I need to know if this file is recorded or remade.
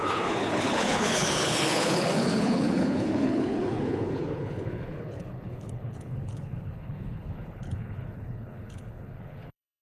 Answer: remade